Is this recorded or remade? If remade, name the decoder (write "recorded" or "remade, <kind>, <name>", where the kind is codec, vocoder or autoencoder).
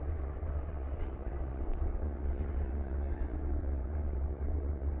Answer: remade, vocoder, WaveNeXt